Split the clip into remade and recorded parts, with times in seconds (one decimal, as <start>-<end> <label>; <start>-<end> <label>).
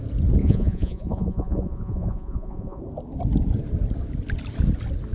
0.0-0.4 recorded; 0.4-2.8 remade; 2.8-5.1 recorded